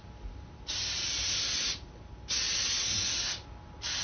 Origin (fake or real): real